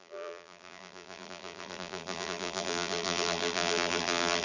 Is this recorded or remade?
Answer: remade